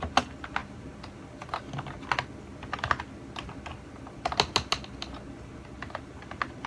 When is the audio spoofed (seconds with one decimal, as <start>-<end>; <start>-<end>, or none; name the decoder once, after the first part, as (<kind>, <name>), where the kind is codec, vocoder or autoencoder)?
none